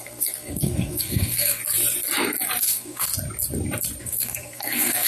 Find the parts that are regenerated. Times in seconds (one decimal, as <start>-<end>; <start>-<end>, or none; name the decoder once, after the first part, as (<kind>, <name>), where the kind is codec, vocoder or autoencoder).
0.0-1.6 (codec, SNAC); 2.6-3.1; 4.0-5.1